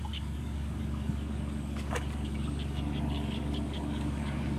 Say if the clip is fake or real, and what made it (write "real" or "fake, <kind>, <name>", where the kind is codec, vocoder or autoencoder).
fake, codec, DAC